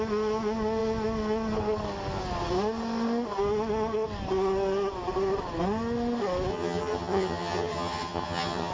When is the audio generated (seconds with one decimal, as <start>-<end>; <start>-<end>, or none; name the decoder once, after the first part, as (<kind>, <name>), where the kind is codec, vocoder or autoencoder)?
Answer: 6.5-8.7 (vocoder, HiFi-GAN)